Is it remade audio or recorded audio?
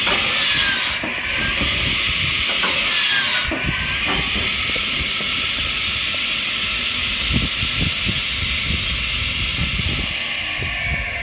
recorded